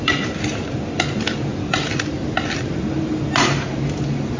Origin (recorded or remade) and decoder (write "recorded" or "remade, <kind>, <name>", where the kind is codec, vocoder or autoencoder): recorded